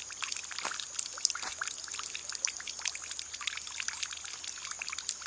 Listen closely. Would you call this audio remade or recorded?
recorded